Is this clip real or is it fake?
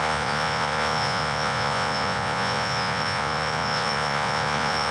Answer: fake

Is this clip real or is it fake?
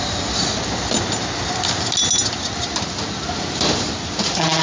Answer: real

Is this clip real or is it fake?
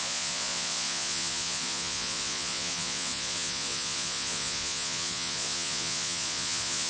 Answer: fake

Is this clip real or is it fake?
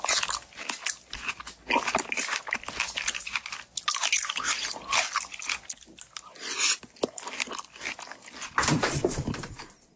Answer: real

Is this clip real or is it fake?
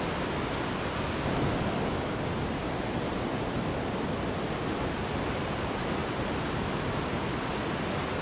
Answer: real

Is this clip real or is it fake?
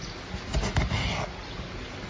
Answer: real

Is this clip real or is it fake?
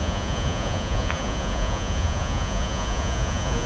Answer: fake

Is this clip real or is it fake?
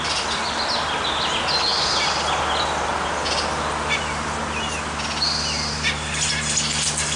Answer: real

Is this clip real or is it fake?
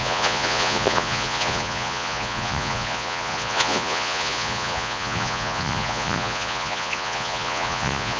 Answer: fake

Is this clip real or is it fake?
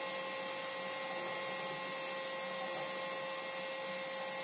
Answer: real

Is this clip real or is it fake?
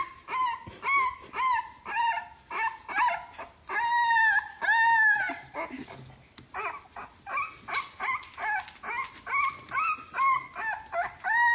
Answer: real